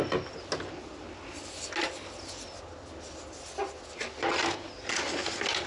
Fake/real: real